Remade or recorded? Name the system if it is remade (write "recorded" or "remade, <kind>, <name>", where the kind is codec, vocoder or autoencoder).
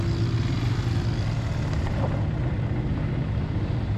recorded